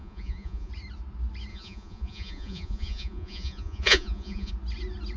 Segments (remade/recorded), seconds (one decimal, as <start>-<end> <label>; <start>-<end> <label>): 0.0-0.7 remade; 0.7-1.5 recorded; 1.5-4.5 remade; 4.5-5.2 recorded